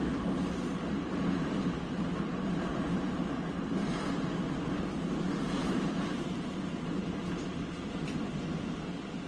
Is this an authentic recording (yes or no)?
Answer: no